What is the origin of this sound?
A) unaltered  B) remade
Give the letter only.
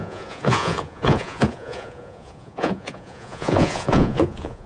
B